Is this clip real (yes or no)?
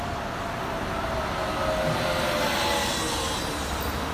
yes